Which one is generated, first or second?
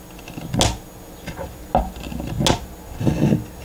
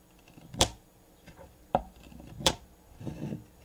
second